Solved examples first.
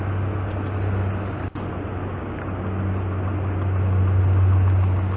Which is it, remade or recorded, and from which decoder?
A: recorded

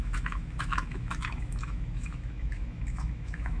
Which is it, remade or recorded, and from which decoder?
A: remade, autoencoder, DAC-VAE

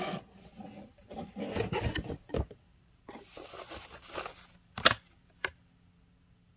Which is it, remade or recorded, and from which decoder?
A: recorded